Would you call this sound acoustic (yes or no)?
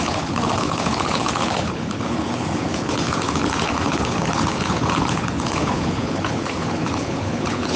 no